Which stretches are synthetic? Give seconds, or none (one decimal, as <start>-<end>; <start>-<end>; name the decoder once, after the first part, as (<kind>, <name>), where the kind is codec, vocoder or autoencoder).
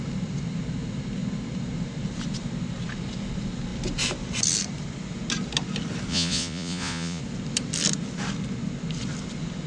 6.1-7.2 (vocoder, Vocos)